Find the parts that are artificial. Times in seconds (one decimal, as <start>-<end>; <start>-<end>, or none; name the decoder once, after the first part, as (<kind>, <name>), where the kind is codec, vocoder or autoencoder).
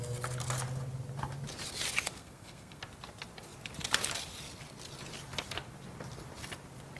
2.2-2.8 (codec, SNAC)